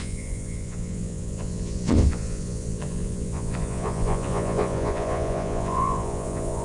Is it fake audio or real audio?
fake